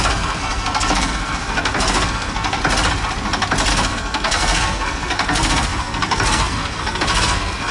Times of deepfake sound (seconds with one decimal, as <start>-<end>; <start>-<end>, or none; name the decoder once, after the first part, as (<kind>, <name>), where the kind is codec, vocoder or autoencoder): 0.0-2.6 (codec, SNAC); 3.7-7.7